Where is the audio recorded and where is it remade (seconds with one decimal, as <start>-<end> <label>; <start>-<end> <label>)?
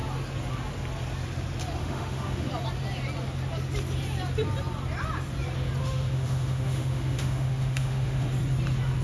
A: 0.0-1.8 recorded; 1.8-2.5 remade; 2.5-5.8 recorded; 5.8-8.3 remade; 8.3-9.0 recorded